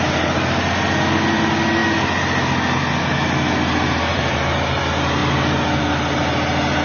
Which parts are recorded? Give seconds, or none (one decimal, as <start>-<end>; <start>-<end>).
0.0-4.1; 4.8-6.8